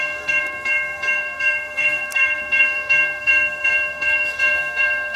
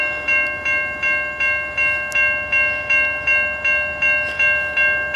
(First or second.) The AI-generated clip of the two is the first